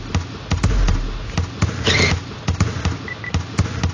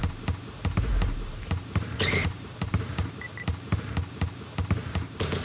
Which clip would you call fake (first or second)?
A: second